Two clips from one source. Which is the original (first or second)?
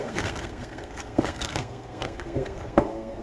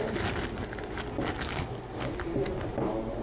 second